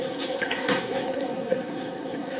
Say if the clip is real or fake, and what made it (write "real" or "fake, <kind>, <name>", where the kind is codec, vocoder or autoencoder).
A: fake, codec, SNAC